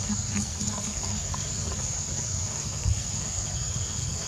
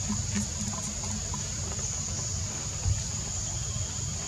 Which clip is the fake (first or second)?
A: first